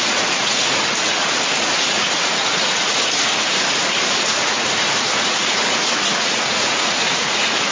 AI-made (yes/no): yes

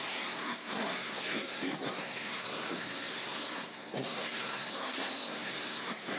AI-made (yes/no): yes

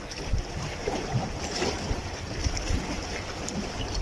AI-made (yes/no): no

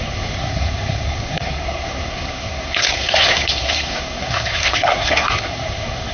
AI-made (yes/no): yes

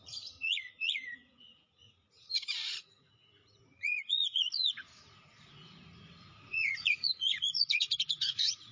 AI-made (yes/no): yes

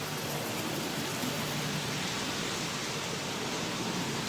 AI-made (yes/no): no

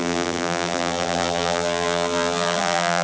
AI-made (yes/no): yes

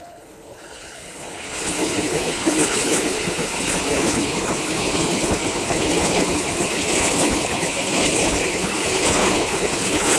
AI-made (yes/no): yes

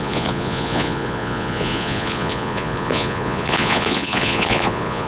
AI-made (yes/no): yes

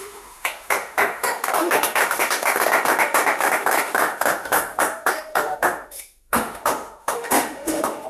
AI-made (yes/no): yes